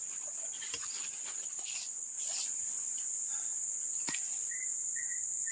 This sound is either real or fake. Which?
real